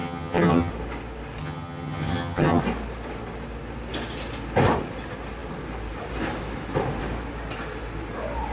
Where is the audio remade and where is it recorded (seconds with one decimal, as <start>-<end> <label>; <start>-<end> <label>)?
0.0-0.7 remade; 0.7-1.4 recorded; 1.4-2.6 remade; 2.6-8.5 recorded